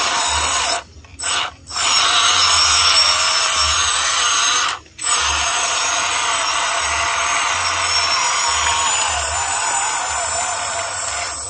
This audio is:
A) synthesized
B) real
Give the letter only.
B